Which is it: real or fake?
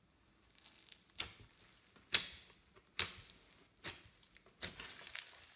real